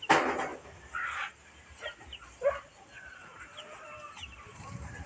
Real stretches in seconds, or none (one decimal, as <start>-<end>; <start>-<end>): 0.0-5.1